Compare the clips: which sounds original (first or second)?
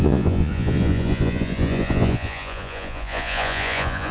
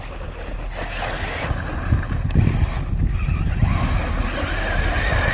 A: second